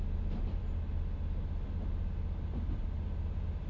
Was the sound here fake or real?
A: real